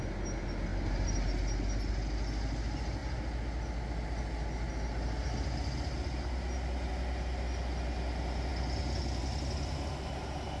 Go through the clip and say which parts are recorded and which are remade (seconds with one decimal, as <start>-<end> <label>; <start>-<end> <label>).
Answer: 0.0-10.6 recorded

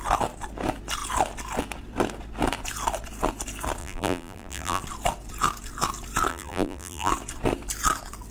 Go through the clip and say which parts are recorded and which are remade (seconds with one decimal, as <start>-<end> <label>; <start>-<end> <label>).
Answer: 0.0-3.8 recorded; 3.8-4.8 remade; 4.8-6.3 recorded; 6.3-7.1 remade; 7.1-8.3 recorded